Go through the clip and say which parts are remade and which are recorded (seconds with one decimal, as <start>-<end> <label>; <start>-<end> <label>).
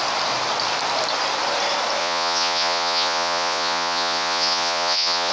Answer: 0.0-2.0 recorded; 2.0-5.3 remade